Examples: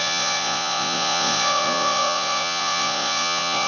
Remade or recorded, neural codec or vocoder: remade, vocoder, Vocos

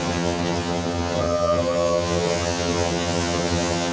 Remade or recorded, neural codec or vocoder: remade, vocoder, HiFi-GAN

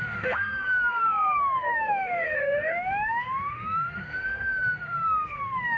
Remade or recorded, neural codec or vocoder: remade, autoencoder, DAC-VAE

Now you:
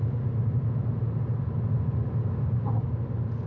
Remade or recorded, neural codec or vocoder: recorded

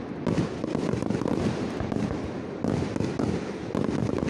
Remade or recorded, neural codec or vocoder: recorded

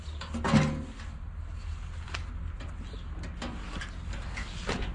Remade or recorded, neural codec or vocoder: recorded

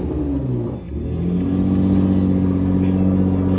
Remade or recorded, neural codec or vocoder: recorded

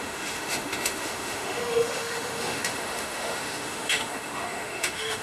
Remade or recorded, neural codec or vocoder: remade, autoencoder, DAC-VAE